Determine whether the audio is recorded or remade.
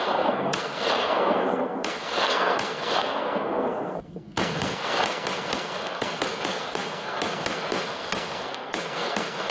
remade